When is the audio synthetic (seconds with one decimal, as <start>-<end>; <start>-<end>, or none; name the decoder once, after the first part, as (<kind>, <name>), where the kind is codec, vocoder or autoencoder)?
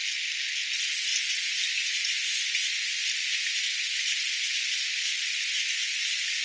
none